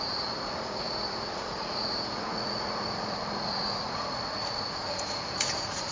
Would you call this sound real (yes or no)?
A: no